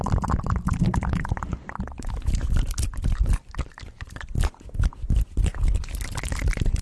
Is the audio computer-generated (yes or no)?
no